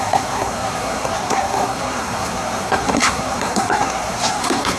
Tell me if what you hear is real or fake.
fake